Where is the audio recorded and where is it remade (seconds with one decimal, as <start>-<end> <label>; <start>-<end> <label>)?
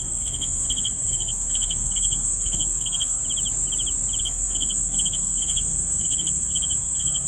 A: 0.0-3.2 remade; 3.2-4.2 recorded; 4.2-7.3 remade